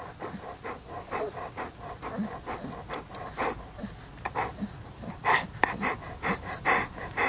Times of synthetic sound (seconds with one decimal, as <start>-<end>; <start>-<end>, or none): 4.5-5.6